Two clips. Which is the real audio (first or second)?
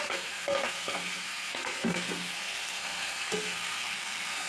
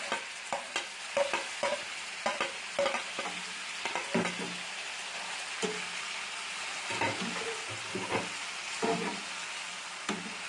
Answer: second